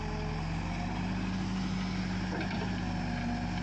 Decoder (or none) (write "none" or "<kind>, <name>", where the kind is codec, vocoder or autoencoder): none